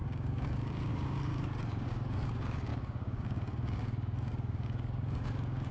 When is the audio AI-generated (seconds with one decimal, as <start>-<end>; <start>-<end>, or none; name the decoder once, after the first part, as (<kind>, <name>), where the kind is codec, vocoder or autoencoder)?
0.0-5.7 (codec, DAC)